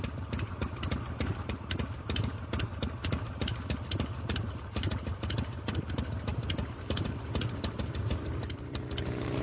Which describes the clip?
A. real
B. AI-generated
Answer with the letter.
B